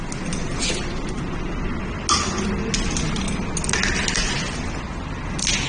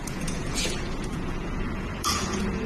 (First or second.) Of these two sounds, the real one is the first